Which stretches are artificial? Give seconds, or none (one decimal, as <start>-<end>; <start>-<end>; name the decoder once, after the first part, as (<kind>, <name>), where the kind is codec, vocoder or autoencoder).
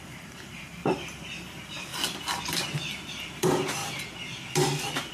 0.0-1.9 (vocoder, BigVGAN v2); 2.9-3.8